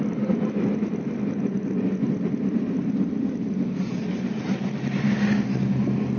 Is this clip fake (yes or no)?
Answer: no